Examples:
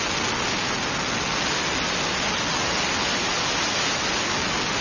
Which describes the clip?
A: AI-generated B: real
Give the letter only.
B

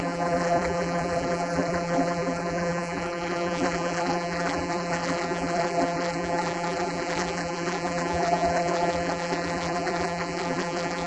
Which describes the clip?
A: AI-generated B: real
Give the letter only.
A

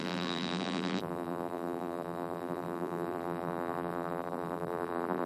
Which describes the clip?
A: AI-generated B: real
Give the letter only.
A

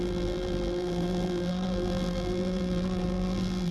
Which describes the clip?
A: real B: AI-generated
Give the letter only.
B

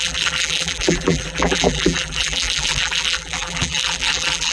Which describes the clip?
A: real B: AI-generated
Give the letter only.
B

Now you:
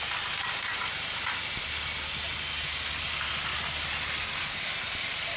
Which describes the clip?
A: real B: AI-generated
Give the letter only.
A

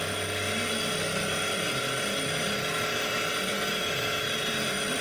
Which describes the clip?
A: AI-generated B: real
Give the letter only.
B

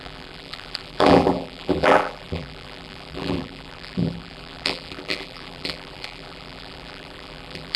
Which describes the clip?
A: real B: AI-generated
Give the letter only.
B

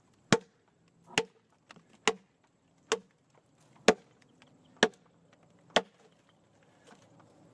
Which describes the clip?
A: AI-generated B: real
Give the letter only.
B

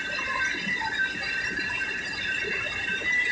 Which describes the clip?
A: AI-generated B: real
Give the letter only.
A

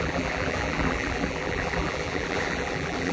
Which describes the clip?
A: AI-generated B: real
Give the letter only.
A